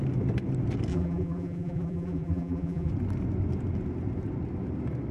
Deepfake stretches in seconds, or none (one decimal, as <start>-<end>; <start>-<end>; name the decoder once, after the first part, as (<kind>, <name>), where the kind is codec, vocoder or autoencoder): 0.9-2.9 (vocoder, BigVGAN v2)